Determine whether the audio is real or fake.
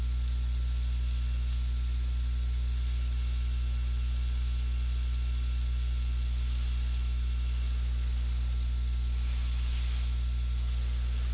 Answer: real